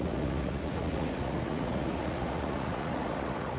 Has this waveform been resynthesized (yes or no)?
yes